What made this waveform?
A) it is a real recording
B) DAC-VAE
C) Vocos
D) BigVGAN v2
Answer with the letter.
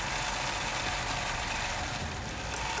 A